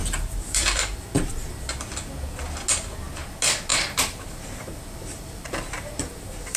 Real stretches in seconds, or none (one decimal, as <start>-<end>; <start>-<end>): 1.5-3.7